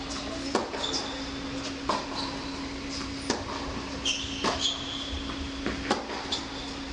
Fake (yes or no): no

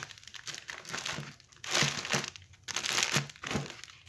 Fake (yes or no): no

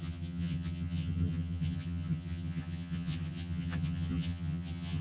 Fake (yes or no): yes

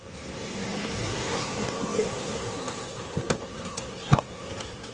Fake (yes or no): yes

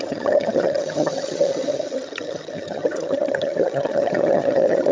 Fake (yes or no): yes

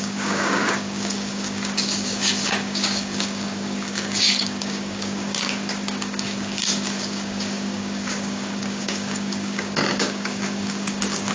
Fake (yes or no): yes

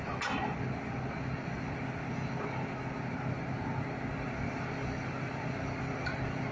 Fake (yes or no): no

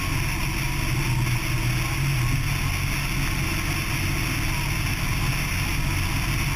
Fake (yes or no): no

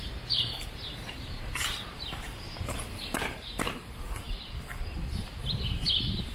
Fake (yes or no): yes